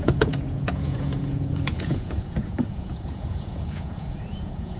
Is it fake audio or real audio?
fake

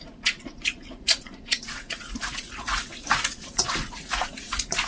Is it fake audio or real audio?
fake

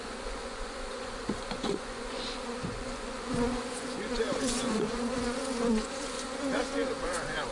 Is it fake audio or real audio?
fake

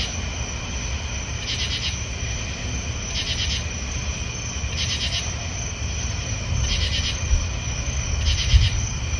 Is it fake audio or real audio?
real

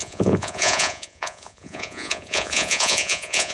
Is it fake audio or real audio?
fake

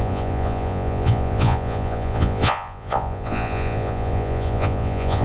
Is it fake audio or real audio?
fake